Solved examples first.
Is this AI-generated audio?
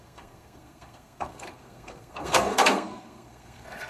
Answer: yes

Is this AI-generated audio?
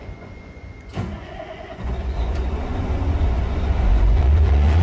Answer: yes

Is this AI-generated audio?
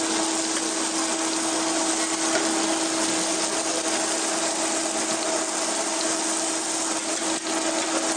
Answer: no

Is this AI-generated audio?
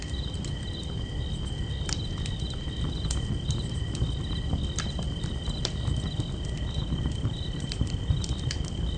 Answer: no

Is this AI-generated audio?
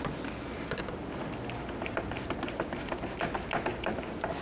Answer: no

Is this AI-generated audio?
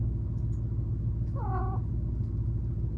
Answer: no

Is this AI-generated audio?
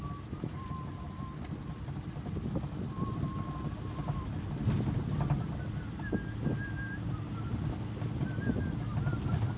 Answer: no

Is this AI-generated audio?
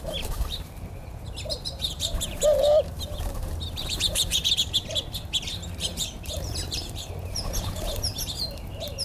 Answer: yes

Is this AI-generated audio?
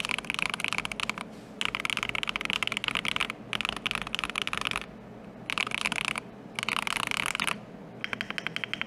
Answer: no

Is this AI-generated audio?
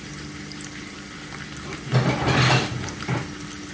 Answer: no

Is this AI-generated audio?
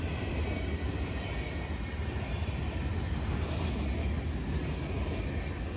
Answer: no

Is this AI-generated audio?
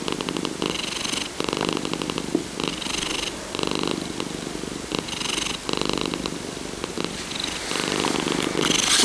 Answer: no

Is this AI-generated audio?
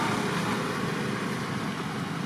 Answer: no